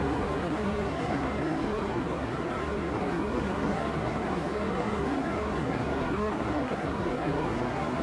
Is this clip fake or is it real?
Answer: fake